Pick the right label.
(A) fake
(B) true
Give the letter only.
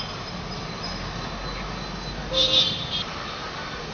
B